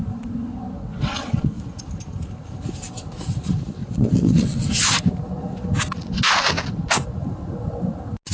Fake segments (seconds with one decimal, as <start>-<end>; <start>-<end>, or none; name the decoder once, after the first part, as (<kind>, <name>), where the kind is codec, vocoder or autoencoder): 0.8-1.6 (vocoder, WaveNeXt); 3.8-4.7